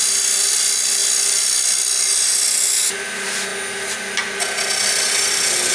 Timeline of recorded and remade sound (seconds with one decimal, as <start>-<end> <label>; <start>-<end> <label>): 0.0-5.7 recorded